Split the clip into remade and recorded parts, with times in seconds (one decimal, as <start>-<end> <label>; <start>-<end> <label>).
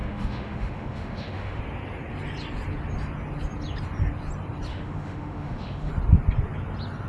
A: 0.0-1.6 remade; 1.6-4.7 recorded; 4.7-5.9 remade; 5.9-7.1 recorded